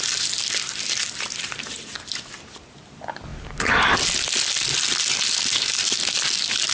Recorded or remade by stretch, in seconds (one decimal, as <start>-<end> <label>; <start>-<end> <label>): 0.0-6.7 recorded